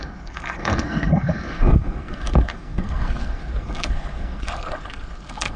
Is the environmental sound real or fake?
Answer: fake